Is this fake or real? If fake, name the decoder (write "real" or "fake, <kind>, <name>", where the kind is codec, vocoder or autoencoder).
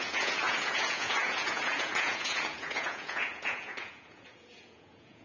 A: fake, vocoder, Vocos